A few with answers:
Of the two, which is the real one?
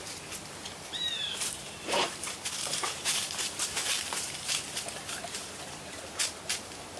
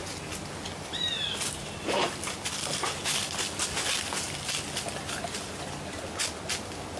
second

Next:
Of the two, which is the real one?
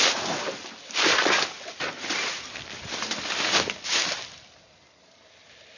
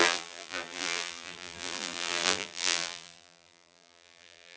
first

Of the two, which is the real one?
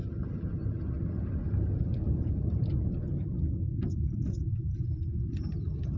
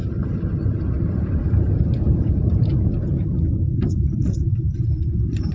first